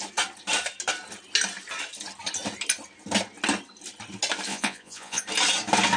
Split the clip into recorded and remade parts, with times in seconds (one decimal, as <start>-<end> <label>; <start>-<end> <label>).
0.0-4.5 recorded; 4.5-5.2 remade; 5.2-6.0 recorded